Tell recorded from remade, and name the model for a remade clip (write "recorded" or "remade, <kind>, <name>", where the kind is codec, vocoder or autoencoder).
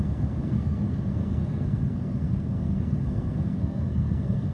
remade, codec, SNAC